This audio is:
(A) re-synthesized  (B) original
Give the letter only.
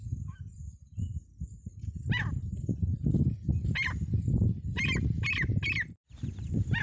B